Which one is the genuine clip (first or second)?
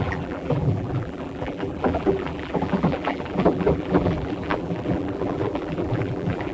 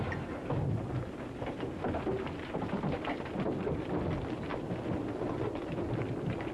second